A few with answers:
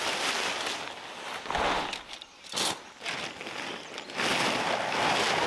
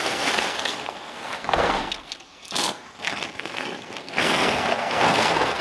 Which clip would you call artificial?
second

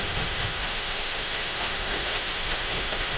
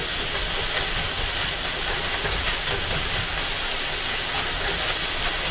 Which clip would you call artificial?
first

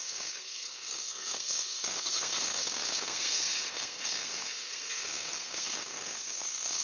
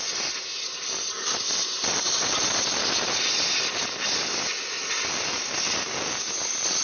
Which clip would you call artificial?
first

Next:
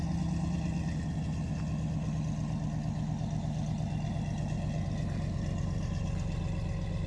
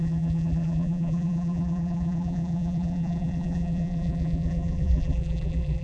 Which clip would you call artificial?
second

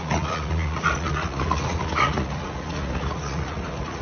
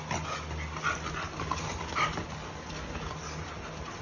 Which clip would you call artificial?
first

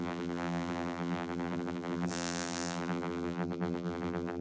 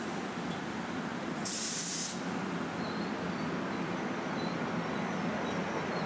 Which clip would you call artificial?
first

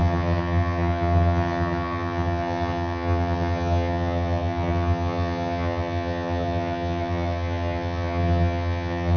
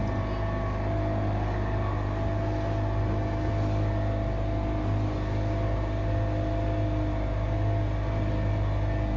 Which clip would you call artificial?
first